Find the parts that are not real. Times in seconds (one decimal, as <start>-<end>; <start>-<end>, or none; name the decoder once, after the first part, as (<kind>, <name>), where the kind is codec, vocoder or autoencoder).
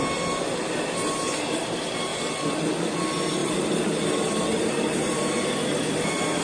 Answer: 3.4-5.9 (vocoder, BigVGAN v2)